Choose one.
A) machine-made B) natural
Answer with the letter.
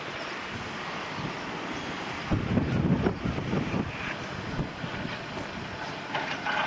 B